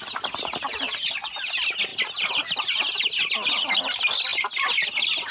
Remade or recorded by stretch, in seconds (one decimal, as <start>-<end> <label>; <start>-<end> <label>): 0.0-5.3 recorded